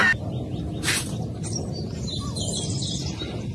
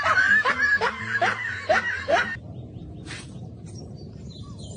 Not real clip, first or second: second